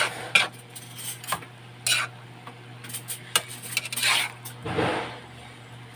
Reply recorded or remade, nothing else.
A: recorded